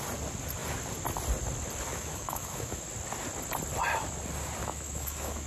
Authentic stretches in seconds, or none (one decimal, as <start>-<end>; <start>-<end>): 0.0-1.9; 2.8-4.6